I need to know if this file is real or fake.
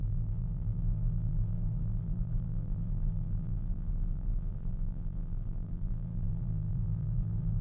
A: fake